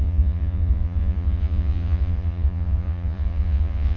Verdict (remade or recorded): remade